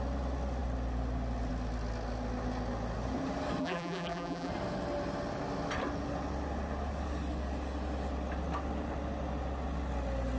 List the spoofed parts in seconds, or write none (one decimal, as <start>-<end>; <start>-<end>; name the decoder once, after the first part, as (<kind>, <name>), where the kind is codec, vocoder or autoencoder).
3.6-4.5 (vocoder, BigVGAN v2)